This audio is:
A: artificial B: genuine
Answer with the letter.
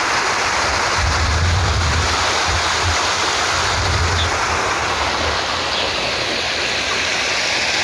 B